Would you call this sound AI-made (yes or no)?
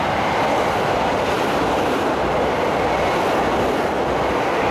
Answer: no